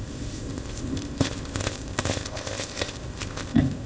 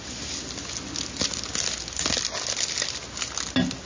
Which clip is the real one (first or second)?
second